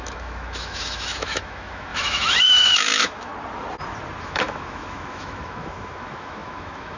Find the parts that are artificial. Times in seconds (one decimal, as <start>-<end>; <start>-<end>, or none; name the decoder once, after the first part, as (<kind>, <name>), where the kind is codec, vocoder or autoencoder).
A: 0.0-3.3 (autoencoder, DAC-VAE); 4.2-7.0